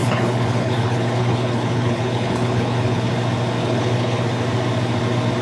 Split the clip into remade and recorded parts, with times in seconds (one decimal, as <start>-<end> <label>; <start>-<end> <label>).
0.0-3.1 remade; 3.1-3.6 recorded; 3.6-4.2 remade; 4.2-5.4 recorded